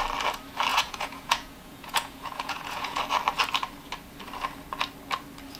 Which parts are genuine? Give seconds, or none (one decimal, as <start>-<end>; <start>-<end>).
0.0-0.7; 3.0-5.6